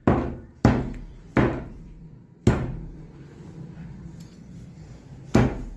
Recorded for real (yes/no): no